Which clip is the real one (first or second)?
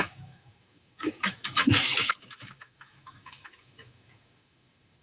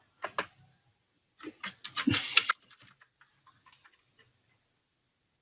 second